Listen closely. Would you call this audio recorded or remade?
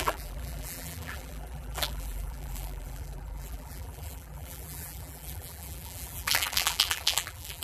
remade